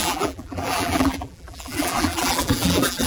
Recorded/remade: remade